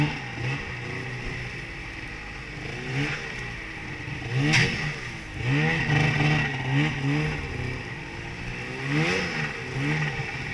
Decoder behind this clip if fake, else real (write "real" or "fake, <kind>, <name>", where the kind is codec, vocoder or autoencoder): real